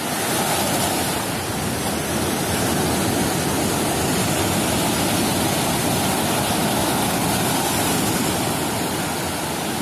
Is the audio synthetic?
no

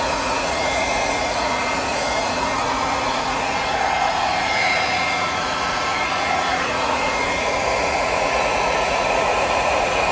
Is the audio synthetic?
yes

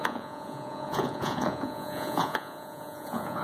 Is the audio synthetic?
yes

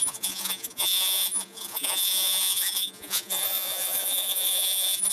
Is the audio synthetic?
yes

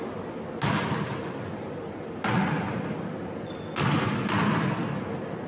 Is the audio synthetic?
no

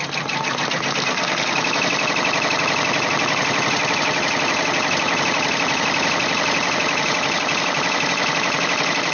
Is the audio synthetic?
no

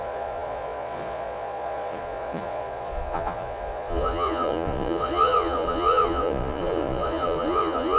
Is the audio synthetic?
yes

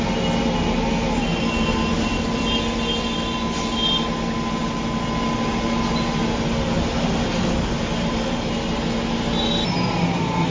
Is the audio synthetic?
no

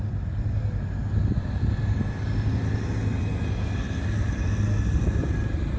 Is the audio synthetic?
no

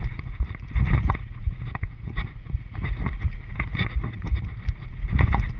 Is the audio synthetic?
yes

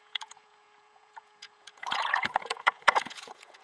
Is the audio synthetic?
yes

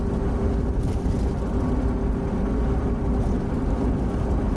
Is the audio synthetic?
no